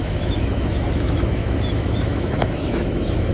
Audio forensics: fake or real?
fake